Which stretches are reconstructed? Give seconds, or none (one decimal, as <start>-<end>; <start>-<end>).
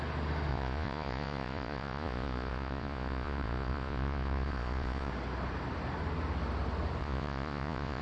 0.5-5.1; 7.0-8.0